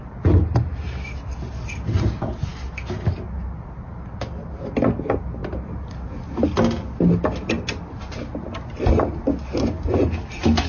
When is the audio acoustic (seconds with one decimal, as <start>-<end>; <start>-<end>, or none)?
0.0-10.7